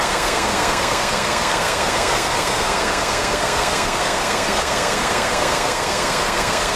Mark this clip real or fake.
fake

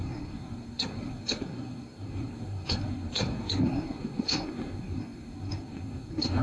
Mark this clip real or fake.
fake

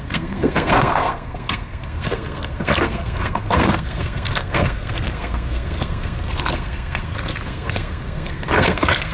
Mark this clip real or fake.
fake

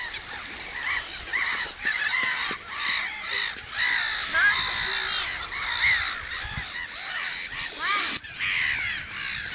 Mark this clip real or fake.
real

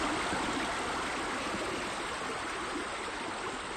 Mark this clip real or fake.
real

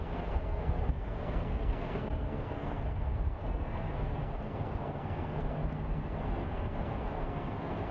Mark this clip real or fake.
fake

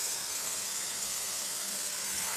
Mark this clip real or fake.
fake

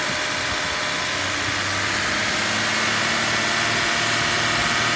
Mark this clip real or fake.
real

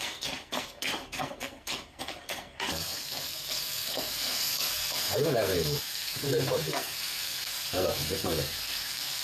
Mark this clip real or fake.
fake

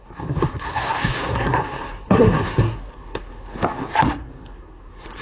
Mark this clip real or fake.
fake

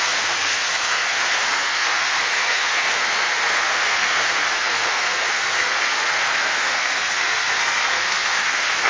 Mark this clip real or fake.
fake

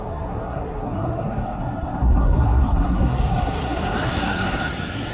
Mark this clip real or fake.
fake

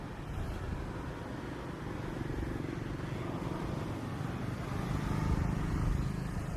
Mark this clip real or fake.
real